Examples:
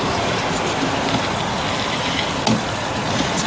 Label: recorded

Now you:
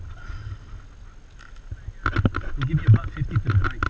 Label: recorded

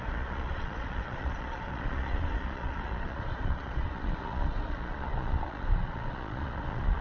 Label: remade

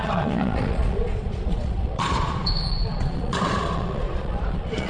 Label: remade